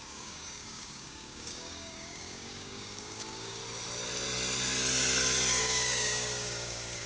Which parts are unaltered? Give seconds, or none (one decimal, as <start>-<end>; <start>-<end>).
3.6-5.6